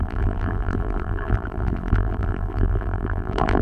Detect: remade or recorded remade